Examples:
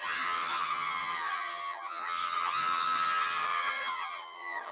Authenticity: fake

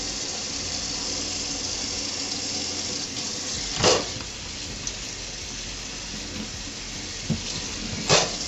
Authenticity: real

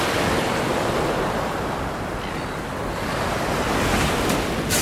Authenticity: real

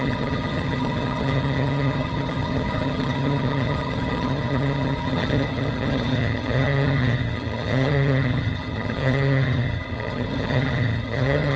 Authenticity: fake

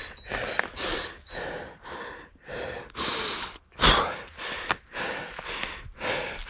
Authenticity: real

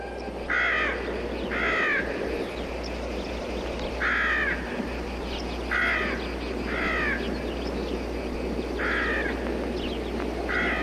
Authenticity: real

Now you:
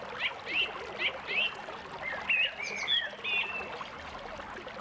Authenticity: real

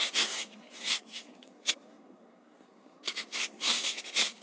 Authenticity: fake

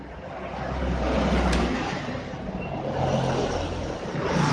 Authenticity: real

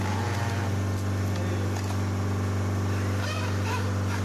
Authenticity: real